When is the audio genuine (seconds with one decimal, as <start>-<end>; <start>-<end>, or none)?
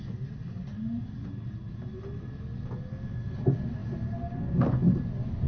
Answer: 0.0-5.5